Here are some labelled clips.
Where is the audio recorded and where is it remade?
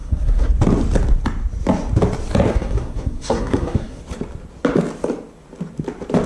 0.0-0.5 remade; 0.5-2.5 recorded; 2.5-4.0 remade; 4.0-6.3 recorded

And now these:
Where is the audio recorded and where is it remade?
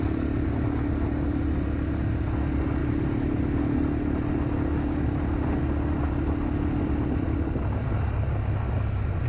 0.0-2.8 recorded; 2.8-3.6 remade; 3.6-9.3 recorded